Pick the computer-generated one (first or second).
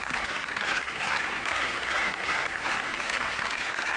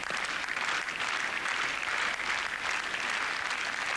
first